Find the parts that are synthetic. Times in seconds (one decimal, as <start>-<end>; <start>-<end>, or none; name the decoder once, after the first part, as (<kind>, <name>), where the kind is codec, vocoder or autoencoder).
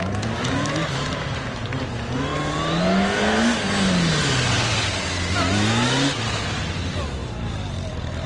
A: none